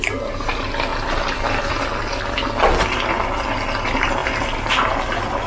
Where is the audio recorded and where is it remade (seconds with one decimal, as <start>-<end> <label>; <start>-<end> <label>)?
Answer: 0.0-0.9 recorded; 0.9-2.2 remade; 2.2-5.5 recorded